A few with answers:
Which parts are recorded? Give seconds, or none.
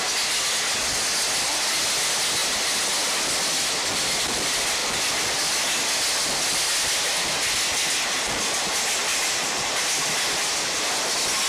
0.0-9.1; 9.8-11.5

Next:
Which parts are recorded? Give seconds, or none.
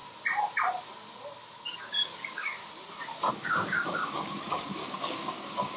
0.0-1.8; 2.6-3.3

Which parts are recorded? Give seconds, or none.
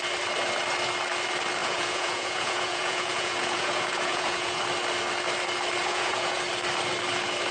0.0-1.6; 4.6-5.8; 6.4-7.5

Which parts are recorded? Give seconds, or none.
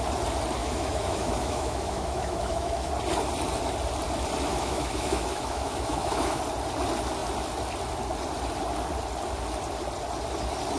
0.0-0.6; 2.9-4.5; 6.4-10.8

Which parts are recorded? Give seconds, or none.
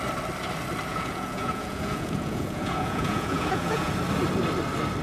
0.0-0.9; 3.9-5.0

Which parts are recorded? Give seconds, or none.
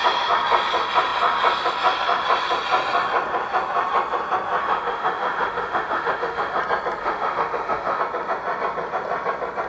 0.0-4.6; 6.6-7.0; 8.0-9.7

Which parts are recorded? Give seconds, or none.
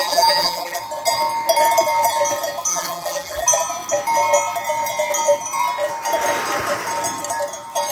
0.8-2.7; 3.4-7.9